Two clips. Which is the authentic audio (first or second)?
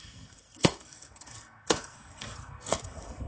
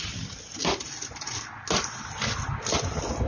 second